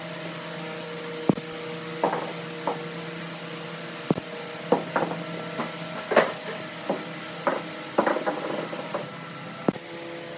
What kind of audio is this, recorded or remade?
recorded